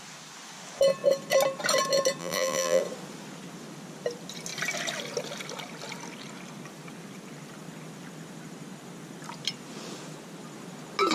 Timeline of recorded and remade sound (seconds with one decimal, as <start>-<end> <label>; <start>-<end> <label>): 0.0-2.2 recorded; 2.2-2.8 remade; 2.8-11.1 recorded